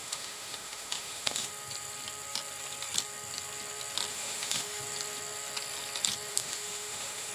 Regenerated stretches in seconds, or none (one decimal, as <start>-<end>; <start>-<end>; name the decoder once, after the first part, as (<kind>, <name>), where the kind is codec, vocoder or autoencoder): 0.0-1.5 (autoencoder, DAC-VAE); 4.1-4.8; 6.3-7.3